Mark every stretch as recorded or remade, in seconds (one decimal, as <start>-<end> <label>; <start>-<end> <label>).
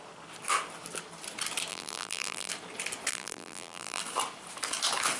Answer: 0.0-1.7 recorded; 1.7-2.5 remade; 2.5-3.1 recorded; 3.1-4.0 remade; 4.0-5.2 recorded